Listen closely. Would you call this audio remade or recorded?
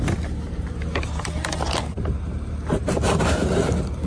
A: recorded